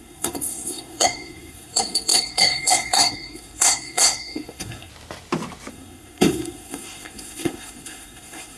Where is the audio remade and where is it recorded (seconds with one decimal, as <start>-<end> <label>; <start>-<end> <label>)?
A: 0.0-4.9 remade; 4.9-5.7 recorded; 5.7-8.6 remade

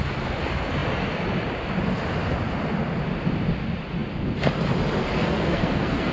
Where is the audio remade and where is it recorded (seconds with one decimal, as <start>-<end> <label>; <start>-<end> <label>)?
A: 0.0-5.0 recorded; 5.0-6.1 remade

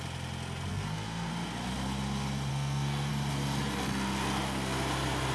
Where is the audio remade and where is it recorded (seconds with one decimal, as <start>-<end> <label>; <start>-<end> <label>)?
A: 0.0-0.7 recorded; 0.7-1.3 remade; 1.3-2.5 recorded; 2.5-3.1 remade; 3.1-5.3 recorded

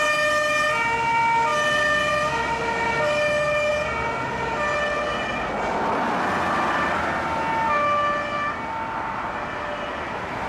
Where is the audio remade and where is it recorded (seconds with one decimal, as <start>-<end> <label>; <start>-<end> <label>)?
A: 0.0-10.5 recorded

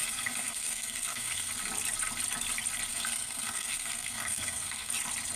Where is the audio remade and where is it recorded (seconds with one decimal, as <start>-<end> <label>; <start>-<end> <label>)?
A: 0.0-1.5 remade; 1.5-2.9 recorded; 2.9-4.9 remade; 4.9-5.4 recorded

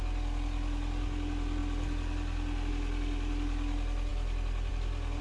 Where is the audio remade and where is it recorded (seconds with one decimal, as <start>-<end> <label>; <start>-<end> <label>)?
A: 0.0-5.2 recorded

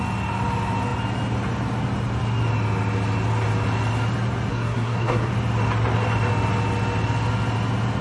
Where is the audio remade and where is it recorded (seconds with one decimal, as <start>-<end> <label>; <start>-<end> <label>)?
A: 0.0-4.5 recorded; 4.5-5.3 remade; 5.3-8.0 recorded